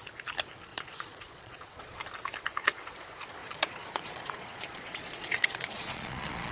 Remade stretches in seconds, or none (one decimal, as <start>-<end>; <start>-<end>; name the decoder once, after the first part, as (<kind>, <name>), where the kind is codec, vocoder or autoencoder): 0.7-2.0 (vocoder, Vocos); 3.4-6.5